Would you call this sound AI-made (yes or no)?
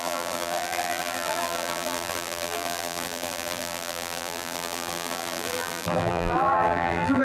yes